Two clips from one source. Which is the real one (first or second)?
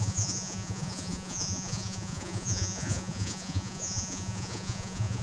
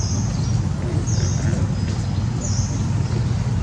second